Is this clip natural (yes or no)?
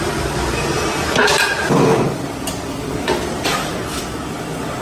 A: no